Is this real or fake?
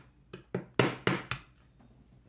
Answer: real